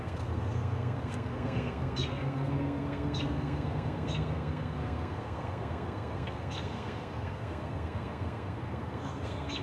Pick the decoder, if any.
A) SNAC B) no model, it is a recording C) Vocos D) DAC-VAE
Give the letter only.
A